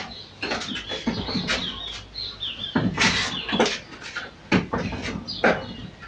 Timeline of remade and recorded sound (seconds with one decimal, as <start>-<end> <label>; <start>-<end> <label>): 0.0-6.1 recorded